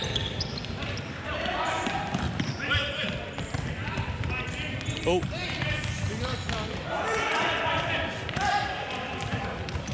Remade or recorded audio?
remade